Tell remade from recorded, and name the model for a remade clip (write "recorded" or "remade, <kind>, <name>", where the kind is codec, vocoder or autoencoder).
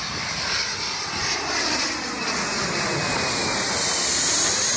recorded